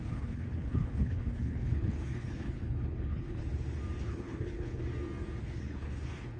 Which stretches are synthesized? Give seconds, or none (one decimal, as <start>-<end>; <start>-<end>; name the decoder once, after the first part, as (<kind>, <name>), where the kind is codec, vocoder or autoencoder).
0.0-3.4 (codec, HILCodec); 4.0-4.8; 5.4-6.4